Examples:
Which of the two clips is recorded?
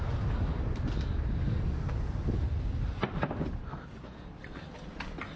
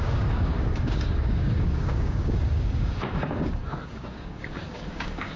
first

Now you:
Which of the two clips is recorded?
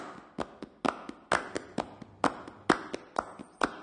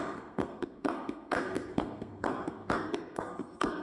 first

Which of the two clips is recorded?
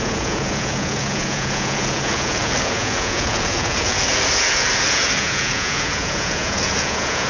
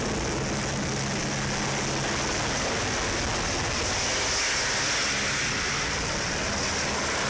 second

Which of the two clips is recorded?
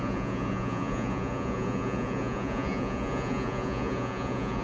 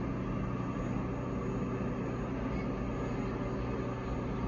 second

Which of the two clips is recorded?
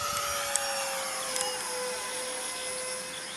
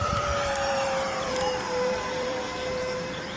first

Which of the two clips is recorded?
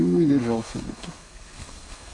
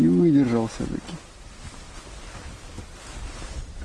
second